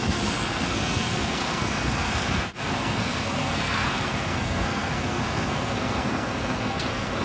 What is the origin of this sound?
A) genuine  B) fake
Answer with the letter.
B